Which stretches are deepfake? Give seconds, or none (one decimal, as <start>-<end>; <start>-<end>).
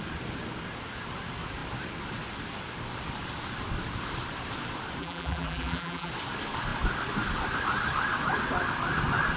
5.0-6.1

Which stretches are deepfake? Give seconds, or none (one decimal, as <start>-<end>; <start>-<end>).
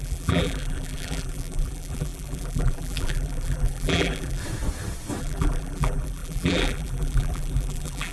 0.0-4.4; 5.2-8.1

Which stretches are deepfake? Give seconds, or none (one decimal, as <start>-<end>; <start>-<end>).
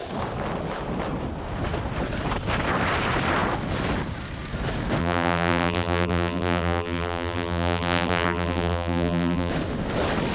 5.0-9.5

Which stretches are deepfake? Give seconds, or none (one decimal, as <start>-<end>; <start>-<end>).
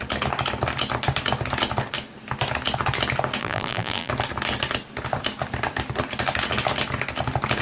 3.4-4.1